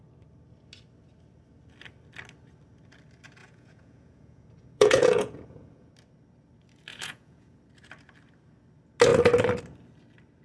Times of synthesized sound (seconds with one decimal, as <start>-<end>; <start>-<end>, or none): 3.4-5.9; 6.9-7.6